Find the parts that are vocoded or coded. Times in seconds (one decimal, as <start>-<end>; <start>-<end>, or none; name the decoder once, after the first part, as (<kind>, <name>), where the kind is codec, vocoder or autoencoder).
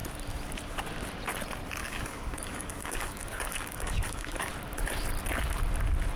1.8-4.5 (codec, DAC)